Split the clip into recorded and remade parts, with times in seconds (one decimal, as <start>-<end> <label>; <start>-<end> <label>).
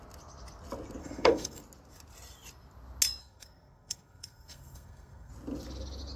0.0-1.0 recorded; 1.0-1.6 remade; 1.6-3.2 recorded; 3.2-5.3 remade; 5.3-6.2 recorded